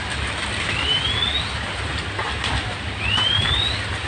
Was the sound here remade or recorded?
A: recorded